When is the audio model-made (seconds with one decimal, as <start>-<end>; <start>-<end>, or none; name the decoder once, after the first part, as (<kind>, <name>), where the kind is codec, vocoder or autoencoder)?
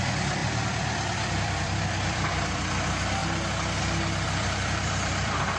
0.0-3.2 (vocoder, BigVGAN v2); 3.8-5.6